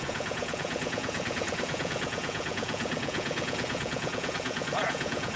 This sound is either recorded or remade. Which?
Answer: remade